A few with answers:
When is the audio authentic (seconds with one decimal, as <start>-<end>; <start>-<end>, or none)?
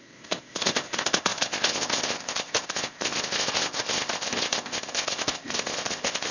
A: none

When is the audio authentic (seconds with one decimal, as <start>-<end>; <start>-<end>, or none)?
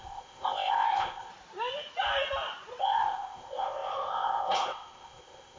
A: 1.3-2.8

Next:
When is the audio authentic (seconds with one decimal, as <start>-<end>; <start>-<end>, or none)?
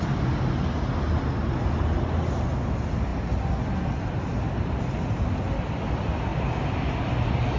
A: 0.0-7.6